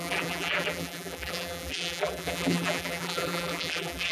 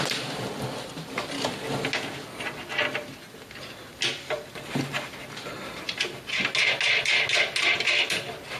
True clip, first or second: second